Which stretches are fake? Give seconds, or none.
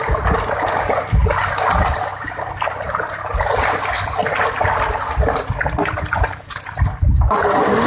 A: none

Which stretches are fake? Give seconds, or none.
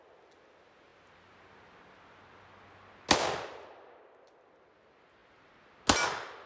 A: none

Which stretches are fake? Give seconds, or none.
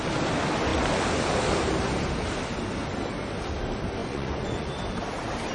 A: 4.0-4.7 (vocoder, Vocos)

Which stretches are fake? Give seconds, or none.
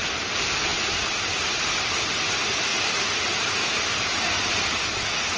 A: none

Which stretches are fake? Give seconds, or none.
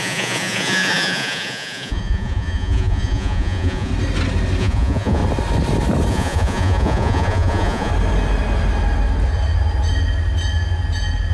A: 0.0-3.9 (vocoder, Vocos); 4.6-5.2; 6.1-7.9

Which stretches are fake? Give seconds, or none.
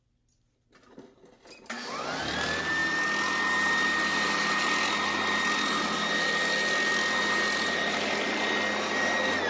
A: none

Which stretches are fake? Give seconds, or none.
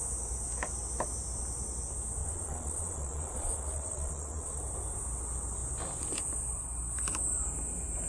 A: 2.2-4.6 (vocoder, Vocos)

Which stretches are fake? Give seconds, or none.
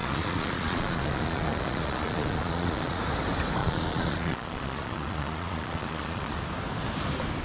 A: 0.0-3.0 (vocoder, Vocos); 3.6-6.4